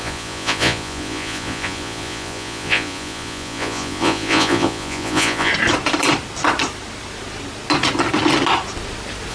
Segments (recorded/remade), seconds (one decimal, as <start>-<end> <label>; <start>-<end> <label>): 0.0-5.5 remade; 5.5-9.3 recorded